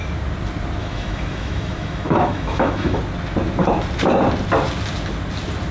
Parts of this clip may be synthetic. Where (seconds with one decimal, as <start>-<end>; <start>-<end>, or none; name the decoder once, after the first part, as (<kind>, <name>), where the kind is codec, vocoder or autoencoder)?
0.8-3.0 (autoencoder, DAC-VAE)

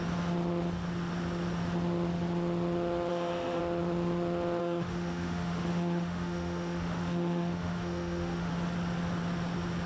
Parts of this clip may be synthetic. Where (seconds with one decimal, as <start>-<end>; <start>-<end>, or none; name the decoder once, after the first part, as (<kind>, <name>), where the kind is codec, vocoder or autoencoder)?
3.1-3.6 (autoencoder, DAC-VAE); 4.6-8.5

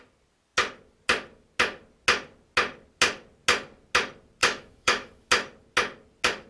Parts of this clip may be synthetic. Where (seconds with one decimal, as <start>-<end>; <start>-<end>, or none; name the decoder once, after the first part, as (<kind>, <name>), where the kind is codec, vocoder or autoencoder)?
4.4-5.3 (autoencoder, DAC-VAE)